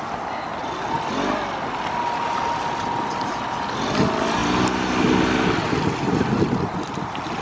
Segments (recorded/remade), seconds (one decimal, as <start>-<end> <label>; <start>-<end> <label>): 0.0-7.4 recorded